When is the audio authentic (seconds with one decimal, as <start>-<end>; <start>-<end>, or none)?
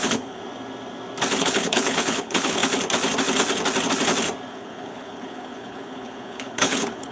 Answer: 0.4-1.4; 2.6-4.5